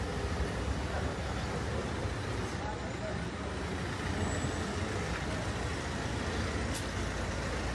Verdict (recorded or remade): recorded